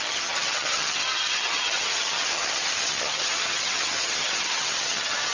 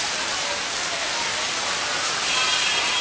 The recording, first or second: second